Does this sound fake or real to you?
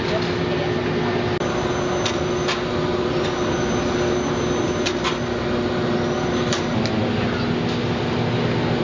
real